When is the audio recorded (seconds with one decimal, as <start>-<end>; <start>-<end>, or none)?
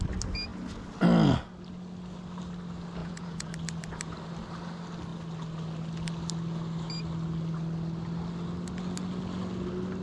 0.0-3.0; 3.5-10.0